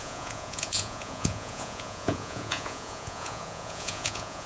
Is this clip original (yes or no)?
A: no